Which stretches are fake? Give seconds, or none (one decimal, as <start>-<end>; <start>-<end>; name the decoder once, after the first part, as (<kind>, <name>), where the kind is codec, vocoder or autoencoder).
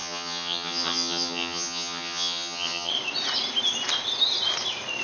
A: 0.0-2.9 (vocoder, HiFi-GAN)